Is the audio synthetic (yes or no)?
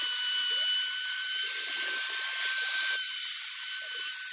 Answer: yes